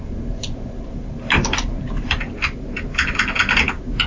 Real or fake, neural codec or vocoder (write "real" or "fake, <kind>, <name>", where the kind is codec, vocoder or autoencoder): real